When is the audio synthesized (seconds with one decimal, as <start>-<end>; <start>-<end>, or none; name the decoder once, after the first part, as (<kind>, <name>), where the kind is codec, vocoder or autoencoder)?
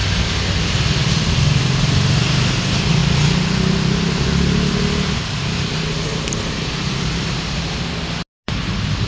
none